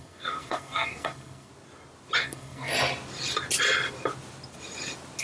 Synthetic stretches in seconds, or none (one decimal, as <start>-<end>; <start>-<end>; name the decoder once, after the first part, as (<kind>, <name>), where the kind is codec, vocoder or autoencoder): 0.0-1.5 (codec, SNAC); 2.2-2.7